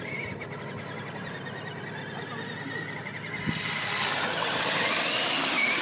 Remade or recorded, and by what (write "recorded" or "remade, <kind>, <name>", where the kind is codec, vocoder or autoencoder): recorded